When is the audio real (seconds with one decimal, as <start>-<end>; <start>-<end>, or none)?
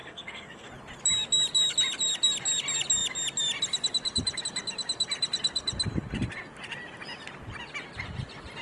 0.7-8.6